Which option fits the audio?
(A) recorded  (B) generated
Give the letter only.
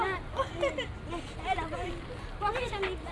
A